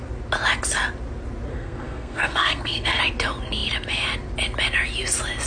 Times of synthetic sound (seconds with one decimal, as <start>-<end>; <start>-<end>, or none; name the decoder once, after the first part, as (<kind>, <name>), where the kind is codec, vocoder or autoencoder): 1.5-3.0 (codec, SNAC)